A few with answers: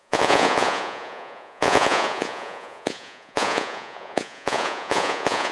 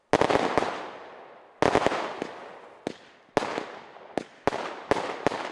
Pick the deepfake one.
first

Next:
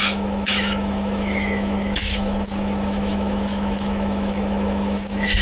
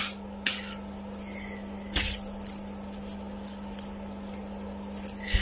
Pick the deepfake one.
first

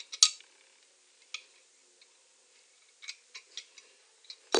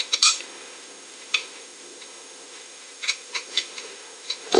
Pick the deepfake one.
second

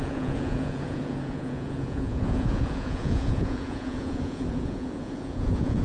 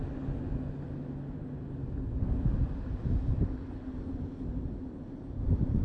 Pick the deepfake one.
first